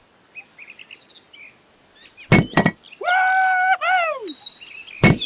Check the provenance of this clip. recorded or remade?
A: recorded